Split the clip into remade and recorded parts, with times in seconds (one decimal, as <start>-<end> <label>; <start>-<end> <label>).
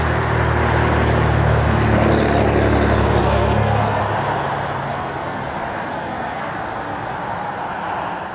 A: 0.0-3.2 recorded; 3.2-4.0 remade; 4.0-4.9 recorded; 4.9-5.4 remade; 5.4-5.9 recorded; 5.9-6.5 remade; 6.5-8.3 recorded